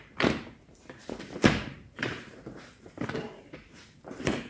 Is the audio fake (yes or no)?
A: yes